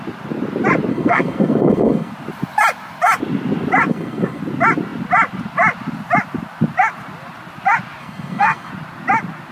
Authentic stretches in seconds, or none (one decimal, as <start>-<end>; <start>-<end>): 0.0-0.9; 2.1-3.9; 4.4-8.0; 8.7-9.5